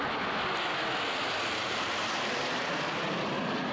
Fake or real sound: real